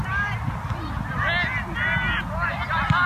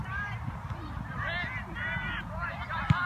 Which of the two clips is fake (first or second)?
second